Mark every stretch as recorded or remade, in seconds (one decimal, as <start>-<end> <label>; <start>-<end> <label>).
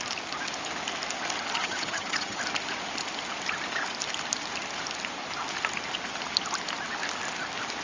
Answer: 0.0-1.6 recorded; 1.6-2.4 remade; 2.4-7.8 recorded